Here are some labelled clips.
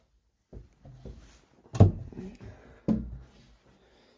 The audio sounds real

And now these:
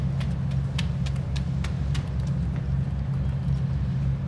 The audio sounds real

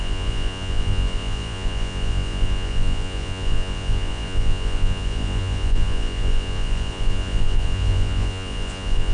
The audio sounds fake